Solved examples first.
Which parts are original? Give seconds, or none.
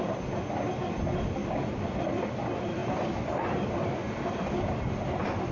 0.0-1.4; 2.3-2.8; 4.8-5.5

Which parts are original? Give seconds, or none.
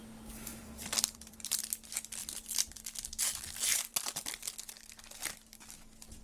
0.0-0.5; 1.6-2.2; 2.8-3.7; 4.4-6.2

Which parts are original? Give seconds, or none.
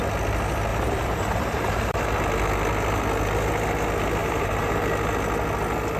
0.0-0.7; 2.0-4.2; 4.8-6.0